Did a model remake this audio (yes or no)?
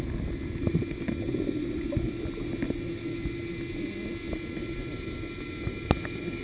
no